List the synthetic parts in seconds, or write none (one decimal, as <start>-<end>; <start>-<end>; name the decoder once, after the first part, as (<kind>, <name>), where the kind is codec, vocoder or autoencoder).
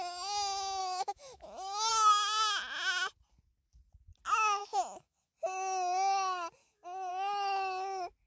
0.8-1.9 (autoencoder, DAC-VAE); 4.6-5.3; 6.6-7.1